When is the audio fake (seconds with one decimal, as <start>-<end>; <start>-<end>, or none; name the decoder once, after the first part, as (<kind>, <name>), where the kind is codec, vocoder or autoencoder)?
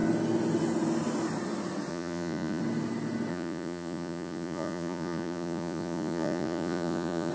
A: 1.9-2.6 (vocoder, Vocos); 3.3-7.3